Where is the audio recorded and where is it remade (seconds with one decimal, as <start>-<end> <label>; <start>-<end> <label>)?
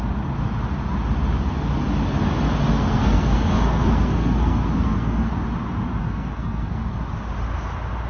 0.0-2.7 recorded; 2.7-5.3 remade; 5.3-6.0 recorded; 6.0-7.0 remade; 7.0-8.1 recorded